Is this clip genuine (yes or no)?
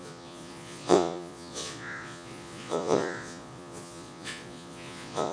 no